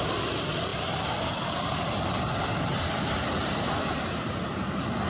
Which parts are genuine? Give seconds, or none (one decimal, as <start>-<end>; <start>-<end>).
none